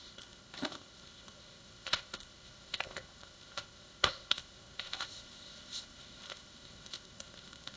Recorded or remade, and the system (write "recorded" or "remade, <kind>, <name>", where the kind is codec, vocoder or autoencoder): remade, codec, ZipCodec